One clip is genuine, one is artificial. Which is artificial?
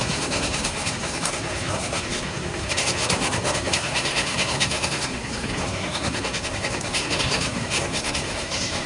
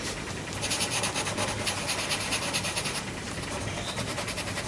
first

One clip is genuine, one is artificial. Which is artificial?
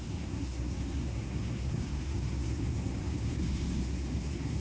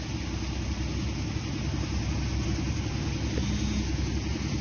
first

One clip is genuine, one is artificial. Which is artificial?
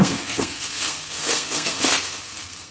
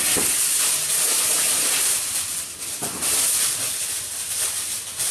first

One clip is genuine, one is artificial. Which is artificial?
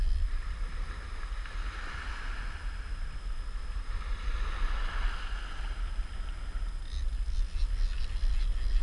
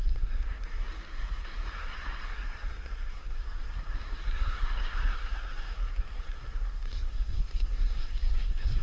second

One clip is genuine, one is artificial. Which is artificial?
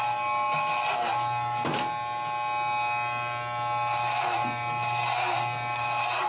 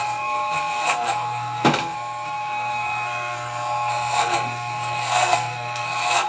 second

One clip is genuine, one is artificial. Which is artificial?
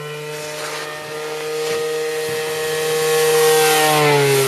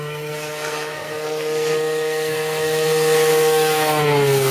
second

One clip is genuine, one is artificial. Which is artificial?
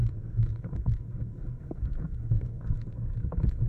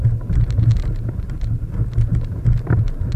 first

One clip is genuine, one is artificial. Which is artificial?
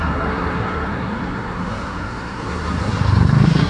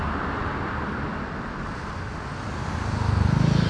first